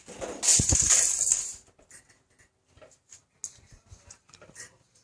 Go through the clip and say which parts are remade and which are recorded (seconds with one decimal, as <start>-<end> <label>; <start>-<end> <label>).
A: 0.0-5.0 recorded